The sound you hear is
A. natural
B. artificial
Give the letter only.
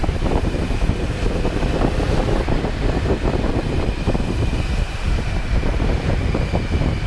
B